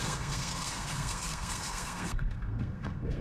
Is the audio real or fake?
fake